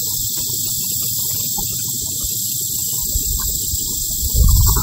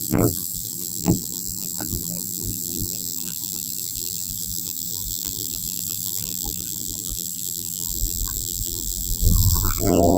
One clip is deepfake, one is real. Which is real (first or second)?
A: first